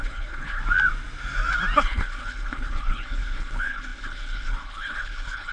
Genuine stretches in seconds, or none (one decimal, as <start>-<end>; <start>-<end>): 0.6-1.8